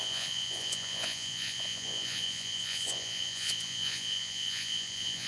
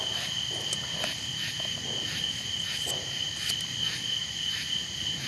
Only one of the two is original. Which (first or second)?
second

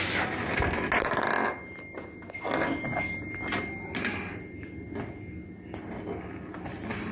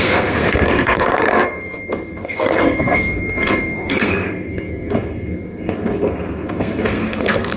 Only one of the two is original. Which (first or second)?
first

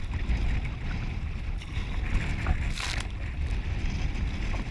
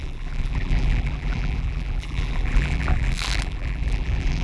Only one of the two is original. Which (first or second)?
first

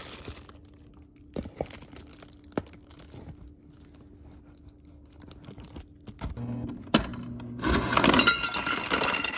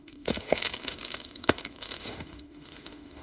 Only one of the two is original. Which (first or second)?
first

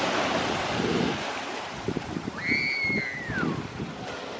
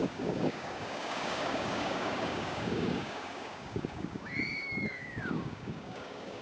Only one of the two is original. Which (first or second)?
first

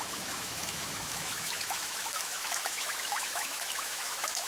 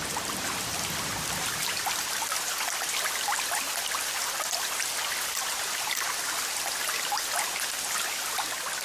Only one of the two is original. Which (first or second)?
second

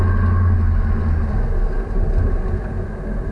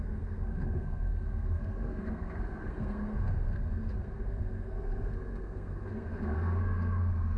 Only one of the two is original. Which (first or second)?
first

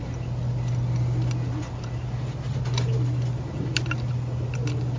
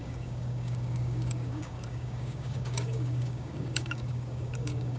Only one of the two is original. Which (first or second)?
first